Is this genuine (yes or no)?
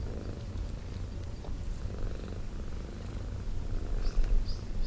yes